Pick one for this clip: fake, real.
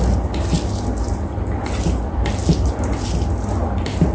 real